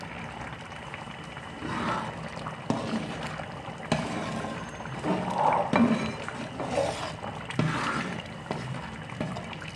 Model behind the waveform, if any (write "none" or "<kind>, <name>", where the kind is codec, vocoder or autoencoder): none